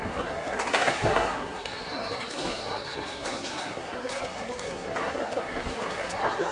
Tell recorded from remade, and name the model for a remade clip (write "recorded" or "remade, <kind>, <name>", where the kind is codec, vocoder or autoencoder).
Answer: remade, codec, SNAC